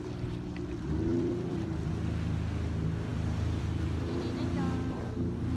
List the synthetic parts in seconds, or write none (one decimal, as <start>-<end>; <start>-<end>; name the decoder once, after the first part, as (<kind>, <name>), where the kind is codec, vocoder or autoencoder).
1.1-1.9 (vocoder, BigVGAN v2); 3.1-4.5